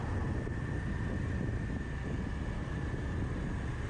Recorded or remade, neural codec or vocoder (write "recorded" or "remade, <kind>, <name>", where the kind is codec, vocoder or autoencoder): recorded